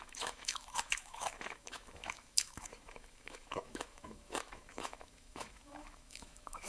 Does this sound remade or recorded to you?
remade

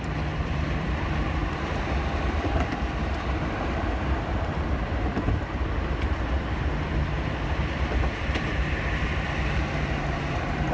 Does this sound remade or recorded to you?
remade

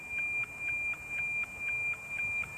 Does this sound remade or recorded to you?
recorded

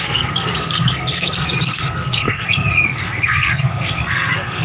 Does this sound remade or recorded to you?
remade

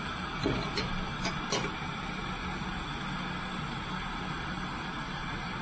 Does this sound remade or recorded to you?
recorded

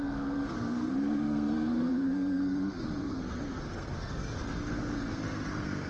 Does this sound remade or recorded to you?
remade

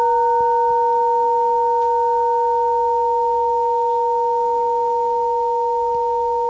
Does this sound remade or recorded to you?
recorded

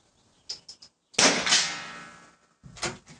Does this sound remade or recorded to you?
recorded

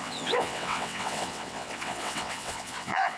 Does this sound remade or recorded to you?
remade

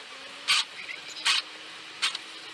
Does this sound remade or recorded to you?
recorded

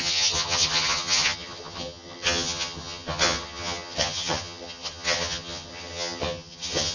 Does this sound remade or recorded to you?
remade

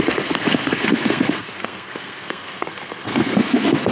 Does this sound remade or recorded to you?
remade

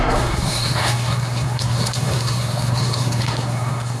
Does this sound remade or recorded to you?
remade